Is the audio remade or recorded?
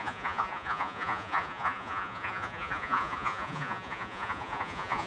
remade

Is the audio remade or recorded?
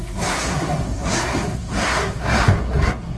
remade